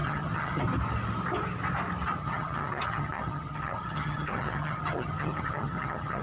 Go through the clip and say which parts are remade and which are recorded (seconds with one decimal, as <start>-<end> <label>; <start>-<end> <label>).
0.0-0.6 remade; 0.6-2.2 recorded; 2.2-6.2 remade